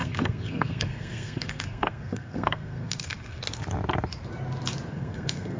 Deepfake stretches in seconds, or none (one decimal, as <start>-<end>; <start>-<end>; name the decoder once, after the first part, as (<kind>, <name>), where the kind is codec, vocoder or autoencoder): 0.0-3.4 (codec, SNAC); 4.9-5.6